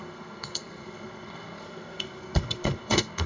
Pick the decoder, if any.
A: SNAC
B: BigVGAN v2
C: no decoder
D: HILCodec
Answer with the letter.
A